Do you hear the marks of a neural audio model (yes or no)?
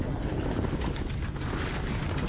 no